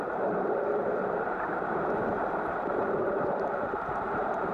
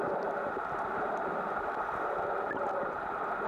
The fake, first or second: first